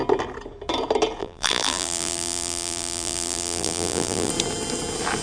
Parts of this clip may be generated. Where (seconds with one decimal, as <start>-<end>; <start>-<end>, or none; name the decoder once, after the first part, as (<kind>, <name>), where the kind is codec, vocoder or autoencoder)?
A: 1.2-4.3 (vocoder, BigVGAN v2)